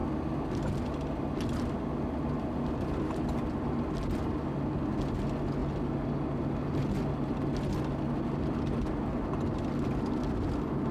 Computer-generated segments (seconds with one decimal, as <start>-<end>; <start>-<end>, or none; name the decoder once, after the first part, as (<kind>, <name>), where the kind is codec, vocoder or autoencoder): none